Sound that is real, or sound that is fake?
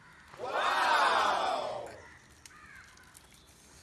real